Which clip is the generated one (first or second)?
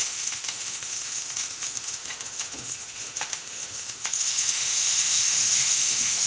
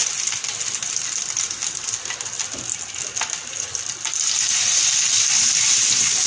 first